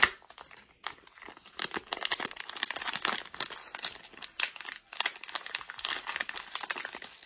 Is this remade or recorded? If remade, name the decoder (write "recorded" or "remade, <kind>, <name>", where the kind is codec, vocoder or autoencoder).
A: recorded